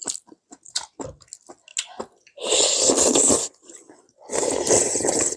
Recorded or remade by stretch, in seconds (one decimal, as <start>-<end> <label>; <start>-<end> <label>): 0.0-5.4 recorded